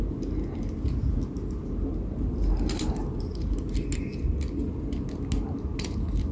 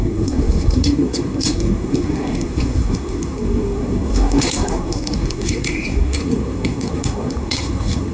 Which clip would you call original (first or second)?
first